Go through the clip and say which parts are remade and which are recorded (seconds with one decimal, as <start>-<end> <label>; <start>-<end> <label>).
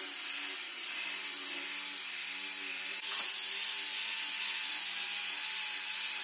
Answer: 0.0-3.9 recorded; 3.9-5.5 remade; 5.5-6.2 recorded